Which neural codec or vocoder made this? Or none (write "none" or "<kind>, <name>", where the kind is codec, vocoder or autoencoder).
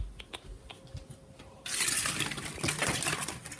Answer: none